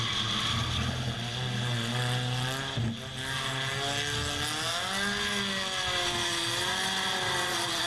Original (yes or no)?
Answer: yes